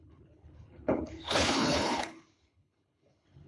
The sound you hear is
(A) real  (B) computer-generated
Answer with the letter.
B